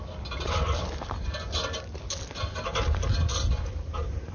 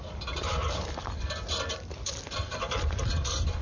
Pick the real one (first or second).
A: first